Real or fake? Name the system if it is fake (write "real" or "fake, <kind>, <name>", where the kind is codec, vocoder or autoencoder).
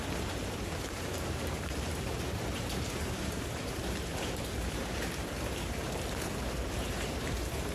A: fake, vocoder, BigVGAN v2